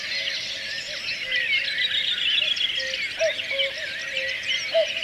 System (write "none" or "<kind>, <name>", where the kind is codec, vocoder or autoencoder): none